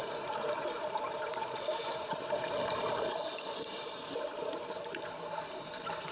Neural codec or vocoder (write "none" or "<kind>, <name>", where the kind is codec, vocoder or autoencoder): vocoder, BigVGAN v2